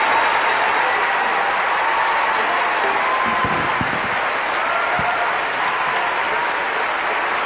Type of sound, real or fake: real